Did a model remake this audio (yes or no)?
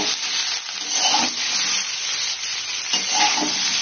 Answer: no